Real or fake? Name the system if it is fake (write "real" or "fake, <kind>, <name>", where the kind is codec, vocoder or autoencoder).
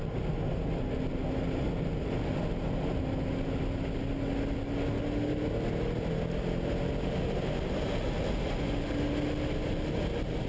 real